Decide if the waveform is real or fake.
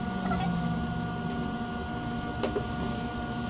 real